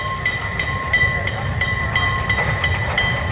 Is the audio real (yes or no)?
yes